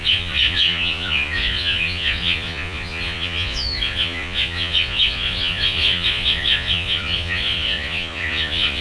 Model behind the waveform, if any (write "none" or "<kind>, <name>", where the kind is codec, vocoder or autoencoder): vocoder, Vocos